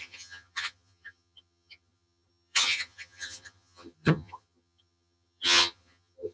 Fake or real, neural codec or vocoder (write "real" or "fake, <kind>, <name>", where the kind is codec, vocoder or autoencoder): fake, vocoder, HiFi-GAN